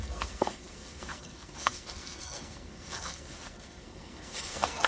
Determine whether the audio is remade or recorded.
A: remade